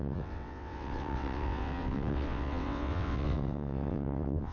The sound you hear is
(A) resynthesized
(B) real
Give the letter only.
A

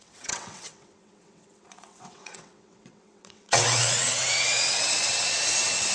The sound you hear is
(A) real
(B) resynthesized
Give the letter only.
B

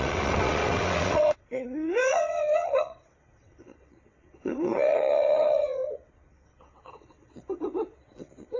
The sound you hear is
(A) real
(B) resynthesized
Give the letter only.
B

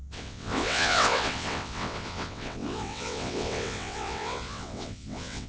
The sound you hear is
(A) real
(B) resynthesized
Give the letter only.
B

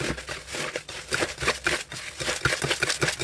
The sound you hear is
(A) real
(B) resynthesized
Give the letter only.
A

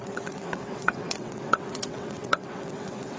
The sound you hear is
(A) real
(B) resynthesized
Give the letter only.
B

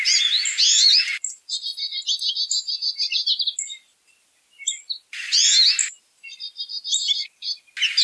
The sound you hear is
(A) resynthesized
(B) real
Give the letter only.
B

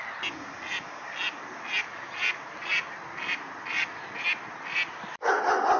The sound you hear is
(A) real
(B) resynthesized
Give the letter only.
A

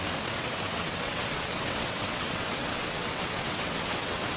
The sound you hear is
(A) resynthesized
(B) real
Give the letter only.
A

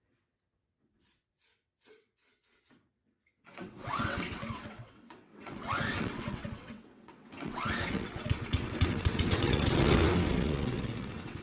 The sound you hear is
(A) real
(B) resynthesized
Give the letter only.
B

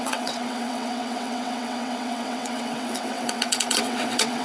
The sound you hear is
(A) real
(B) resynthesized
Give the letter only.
B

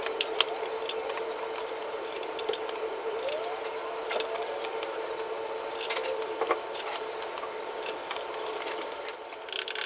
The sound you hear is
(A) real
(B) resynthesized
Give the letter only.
A